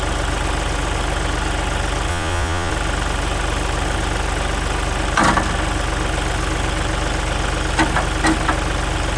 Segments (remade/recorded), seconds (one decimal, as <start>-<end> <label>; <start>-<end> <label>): 0.0-2.1 recorded; 2.1-2.7 remade; 2.7-9.2 recorded

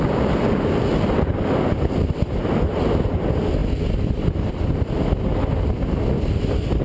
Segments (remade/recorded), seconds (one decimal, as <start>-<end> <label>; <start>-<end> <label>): 0.0-6.8 recorded

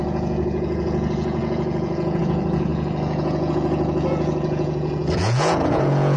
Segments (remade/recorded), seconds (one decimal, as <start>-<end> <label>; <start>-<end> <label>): 0.0-6.2 remade

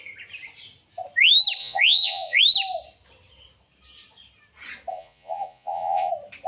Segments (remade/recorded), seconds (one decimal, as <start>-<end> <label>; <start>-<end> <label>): 0.0-1.6 recorded; 1.6-2.4 remade; 2.4-4.9 recorded; 4.9-6.1 remade; 6.1-6.5 recorded

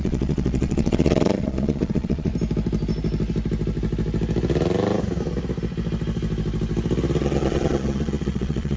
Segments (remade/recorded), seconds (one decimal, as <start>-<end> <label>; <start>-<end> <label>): 0.0-2.3 remade; 2.3-7.2 recorded; 7.2-8.8 remade

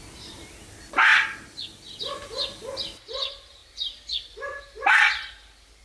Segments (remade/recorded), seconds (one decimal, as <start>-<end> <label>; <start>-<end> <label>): 0.0-5.8 recorded

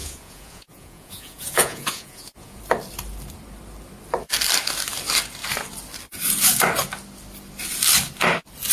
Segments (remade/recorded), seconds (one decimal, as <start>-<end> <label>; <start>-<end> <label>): 0.0-2.6 remade; 2.6-8.7 recorded